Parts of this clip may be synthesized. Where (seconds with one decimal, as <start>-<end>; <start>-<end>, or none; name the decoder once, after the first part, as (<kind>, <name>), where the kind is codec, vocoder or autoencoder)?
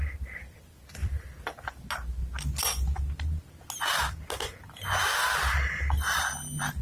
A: 1.0-1.8 (vocoder, BigVGAN v2)